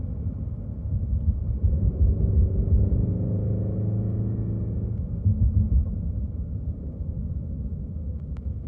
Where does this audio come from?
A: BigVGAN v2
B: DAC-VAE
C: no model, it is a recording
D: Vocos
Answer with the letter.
C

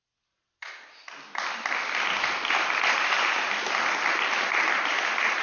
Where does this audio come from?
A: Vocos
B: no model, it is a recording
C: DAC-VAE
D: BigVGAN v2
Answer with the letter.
B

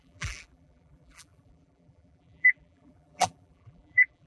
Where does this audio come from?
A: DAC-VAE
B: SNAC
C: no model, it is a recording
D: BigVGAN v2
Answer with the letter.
D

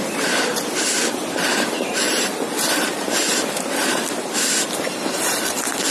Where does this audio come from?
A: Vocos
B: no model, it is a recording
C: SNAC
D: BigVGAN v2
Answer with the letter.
D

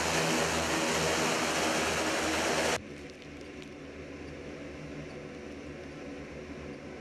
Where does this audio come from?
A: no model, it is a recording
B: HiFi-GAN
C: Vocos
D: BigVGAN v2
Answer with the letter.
A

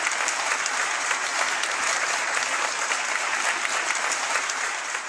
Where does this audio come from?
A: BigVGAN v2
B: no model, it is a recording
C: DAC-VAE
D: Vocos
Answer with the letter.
A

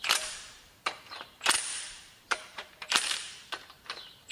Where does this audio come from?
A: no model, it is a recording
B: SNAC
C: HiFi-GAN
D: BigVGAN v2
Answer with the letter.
D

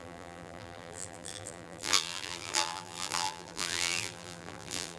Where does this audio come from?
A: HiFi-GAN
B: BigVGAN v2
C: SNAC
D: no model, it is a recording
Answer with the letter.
B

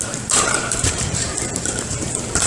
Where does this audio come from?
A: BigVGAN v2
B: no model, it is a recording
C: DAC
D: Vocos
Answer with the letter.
A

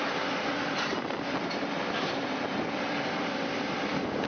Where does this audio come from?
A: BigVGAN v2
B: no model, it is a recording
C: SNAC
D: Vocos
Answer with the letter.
A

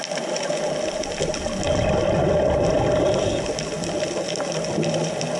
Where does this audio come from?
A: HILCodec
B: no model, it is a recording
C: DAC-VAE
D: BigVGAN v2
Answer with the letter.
B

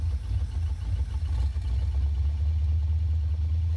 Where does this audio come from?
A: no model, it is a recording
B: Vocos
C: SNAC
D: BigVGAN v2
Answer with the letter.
A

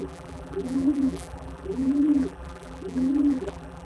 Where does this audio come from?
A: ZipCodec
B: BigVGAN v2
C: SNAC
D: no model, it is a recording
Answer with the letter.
B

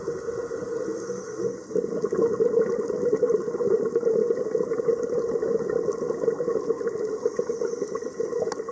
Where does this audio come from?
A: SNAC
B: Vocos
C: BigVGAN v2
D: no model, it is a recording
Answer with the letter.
D